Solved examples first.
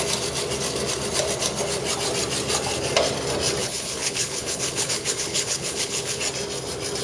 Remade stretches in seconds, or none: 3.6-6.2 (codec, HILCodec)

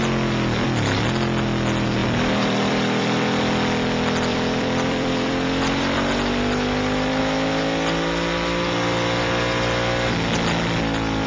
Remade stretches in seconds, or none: 2.0-3.4 (vocoder, BigVGAN v2); 4.3-7.2

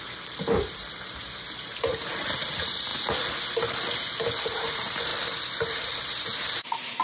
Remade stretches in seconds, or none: 0.0-2.9 (vocoder, BigVGAN v2); 3.9-5.1; 5.7-7.0

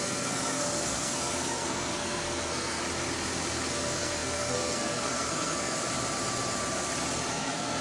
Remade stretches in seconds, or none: 0.0-2.8 (codec, SNAC); 3.7-5.8; 7.3-7.8

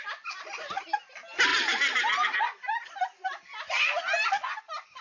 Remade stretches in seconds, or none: 1.5-2.4 (vocoder, BigVGAN v2)